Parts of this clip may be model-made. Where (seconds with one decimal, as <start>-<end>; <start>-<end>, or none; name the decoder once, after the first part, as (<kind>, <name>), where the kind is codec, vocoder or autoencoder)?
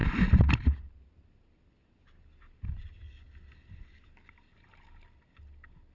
none